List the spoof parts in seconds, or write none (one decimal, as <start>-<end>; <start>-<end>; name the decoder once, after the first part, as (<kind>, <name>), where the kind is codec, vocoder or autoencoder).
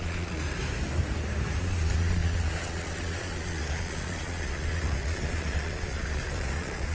0.0-0.4 (vocoder, Vocos); 1.6-6.9